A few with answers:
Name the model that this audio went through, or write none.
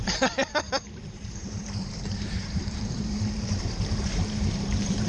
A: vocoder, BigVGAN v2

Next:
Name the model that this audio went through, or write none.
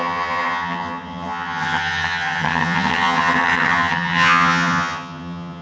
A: vocoder, HiFi-GAN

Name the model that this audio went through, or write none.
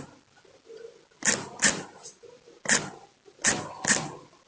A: none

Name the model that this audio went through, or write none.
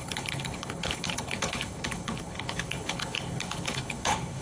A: codec, HILCodec